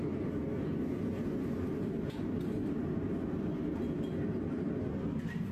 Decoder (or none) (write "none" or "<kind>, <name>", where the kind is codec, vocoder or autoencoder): none